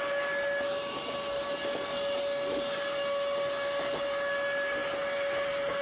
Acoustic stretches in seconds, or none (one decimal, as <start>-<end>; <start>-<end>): 0.0-5.8